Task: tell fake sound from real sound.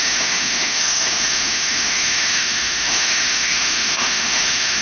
fake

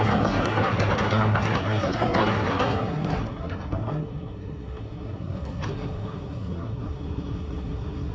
fake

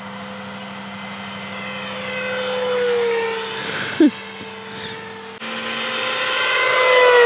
real